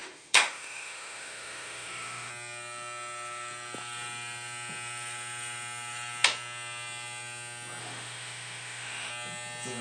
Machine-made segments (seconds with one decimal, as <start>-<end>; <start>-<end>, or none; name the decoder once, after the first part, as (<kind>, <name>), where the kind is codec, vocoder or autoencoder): 0.0-2.3 (autoencoder, DAC-VAE); 7.8-9.1